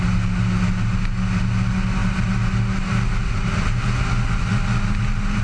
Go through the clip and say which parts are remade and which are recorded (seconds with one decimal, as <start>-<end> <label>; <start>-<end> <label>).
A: 0.0-5.4 recorded